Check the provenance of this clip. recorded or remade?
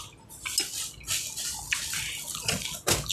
recorded